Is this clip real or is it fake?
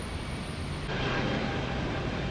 real